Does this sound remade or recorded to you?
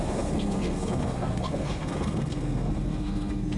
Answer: remade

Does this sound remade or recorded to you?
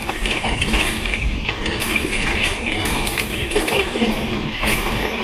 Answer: remade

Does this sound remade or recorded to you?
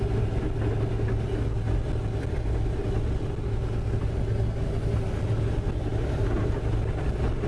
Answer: recorded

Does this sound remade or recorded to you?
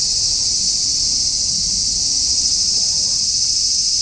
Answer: recorded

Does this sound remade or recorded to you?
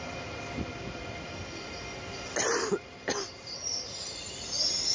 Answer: recorded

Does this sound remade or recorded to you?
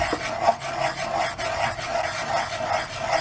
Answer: recorded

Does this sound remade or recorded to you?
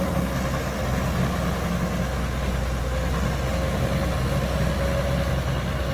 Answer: recorded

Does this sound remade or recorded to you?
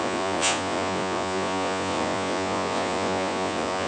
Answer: remade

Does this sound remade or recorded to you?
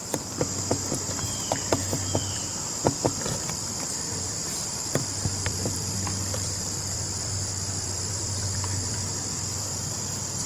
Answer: remade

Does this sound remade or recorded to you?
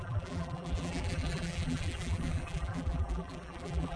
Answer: remade